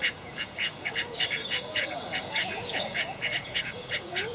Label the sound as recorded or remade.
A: remade